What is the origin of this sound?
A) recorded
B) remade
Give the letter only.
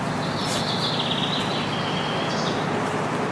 A